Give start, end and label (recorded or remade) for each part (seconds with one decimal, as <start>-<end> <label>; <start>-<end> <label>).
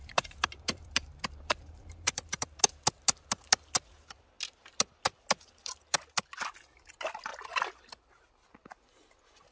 0.0-2.8 remade; 2.8-9.5 recorded